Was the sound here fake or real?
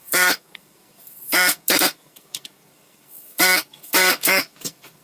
fake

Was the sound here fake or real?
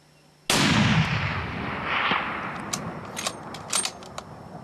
real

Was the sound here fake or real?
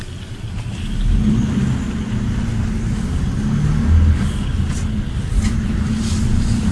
real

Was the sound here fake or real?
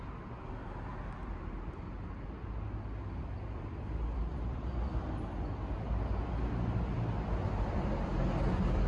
real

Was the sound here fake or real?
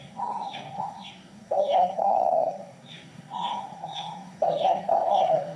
fake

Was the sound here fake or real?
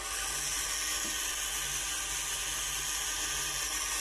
real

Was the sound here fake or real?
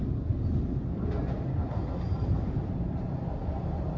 real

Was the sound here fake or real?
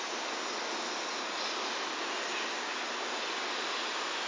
real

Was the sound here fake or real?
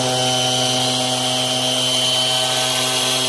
real